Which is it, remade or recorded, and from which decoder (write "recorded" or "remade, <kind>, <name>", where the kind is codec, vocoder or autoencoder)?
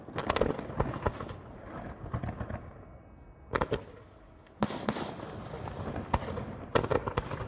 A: recorded